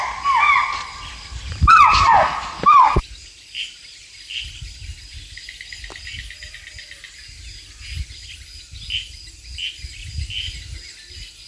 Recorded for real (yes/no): yes